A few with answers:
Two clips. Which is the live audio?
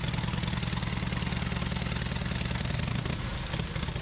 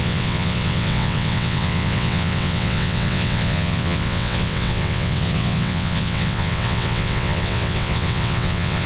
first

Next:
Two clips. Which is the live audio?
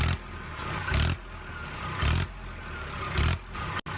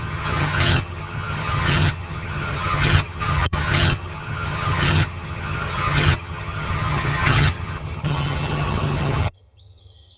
first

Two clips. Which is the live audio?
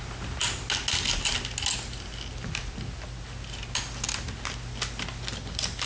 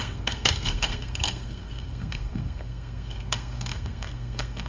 first